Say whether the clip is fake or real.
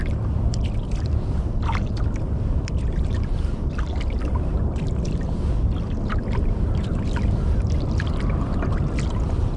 real